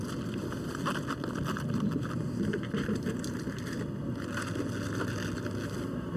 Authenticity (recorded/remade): recorded